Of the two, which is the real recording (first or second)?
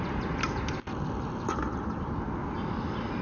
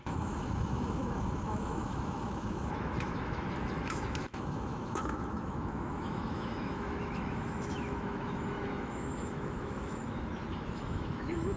first